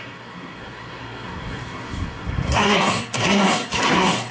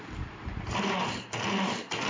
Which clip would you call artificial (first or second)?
first